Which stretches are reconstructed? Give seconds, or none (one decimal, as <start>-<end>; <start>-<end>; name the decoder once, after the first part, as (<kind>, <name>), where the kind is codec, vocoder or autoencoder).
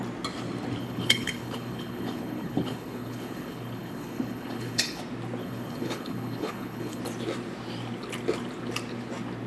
0.8-5.0 (codec, HILCodec); 5.4-7.0